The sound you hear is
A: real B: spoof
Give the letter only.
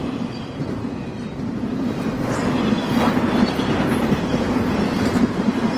A